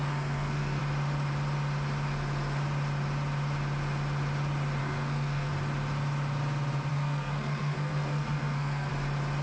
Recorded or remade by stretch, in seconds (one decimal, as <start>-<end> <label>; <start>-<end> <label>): 0.0-0.8 remade; 0.8-4.8 recorded; 4.8-5.5 remade; 5.5-6.9 recorded; 6.9-8.9 remade; 8.9-9.4 recorded